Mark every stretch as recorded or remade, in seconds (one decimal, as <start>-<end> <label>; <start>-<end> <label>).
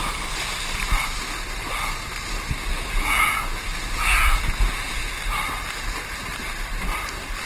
0.0-2.7 recorded; 2.7-5.0 remade; 5.0-7.5 recorded